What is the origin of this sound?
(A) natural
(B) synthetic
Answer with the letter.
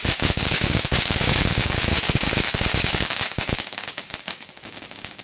B